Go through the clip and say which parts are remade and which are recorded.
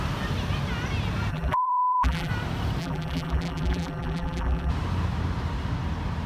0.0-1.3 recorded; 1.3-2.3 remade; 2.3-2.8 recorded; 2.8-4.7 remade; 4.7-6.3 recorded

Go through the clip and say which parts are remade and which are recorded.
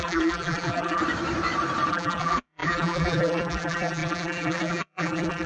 0.0-1.0 remade; 1.0-1.9 recorded; 1.9-5.5 remade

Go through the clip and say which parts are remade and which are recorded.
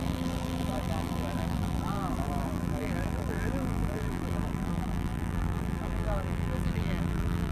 0.0-7.5 remade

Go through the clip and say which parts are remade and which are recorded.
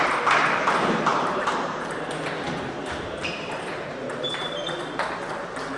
0.0-1.1 recorded; 1.1-4.5 remade; 4.5-5.8 recorded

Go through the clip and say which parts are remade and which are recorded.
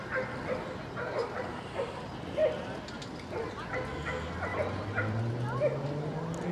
0.0-1.2 recorded; 1.2-1.7 remade; 1.7-4.5 recorded; 4.5-5.2 remade; 5.2-6.5 recorded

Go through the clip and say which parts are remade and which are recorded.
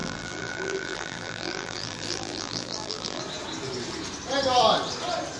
0.0-3.2 remade; 3.2-5.4 recorded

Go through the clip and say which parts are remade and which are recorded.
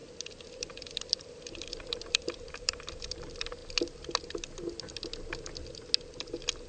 0.0-0.5 recorded; 0.5-3.6 remade; 3.6-6.7 recorded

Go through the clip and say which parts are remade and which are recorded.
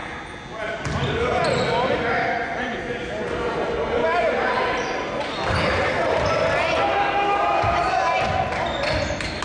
0.0-4.0 recorded; 4.0-4.6 remade; 4.6-9.4 recorded